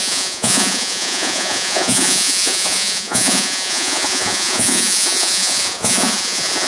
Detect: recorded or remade remade